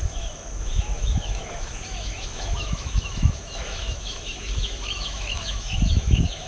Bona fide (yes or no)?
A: no